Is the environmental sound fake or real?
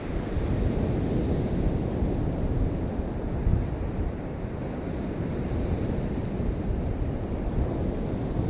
real